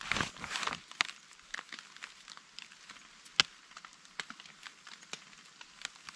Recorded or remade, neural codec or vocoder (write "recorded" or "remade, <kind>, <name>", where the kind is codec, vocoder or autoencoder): recorded